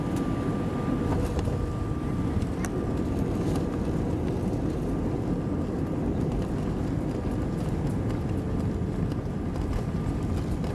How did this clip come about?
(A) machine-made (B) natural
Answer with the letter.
B